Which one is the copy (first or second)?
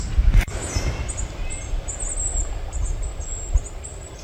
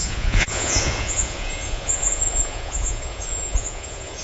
second